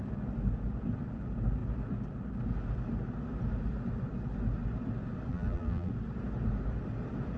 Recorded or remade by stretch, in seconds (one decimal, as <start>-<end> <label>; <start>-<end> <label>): 0.0-5.3 recorded; 5.3-5.9 remade; 5.9-7.4 recorded